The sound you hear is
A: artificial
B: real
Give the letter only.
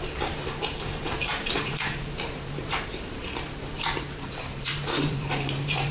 A